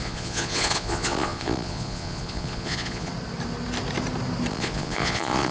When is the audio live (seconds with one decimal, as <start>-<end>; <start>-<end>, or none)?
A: 3.1-4.5